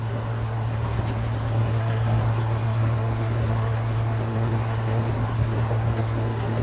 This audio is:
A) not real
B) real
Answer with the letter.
A